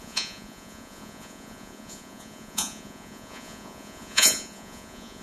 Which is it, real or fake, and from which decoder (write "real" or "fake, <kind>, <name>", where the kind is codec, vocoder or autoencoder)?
fake, vocoder, Vocos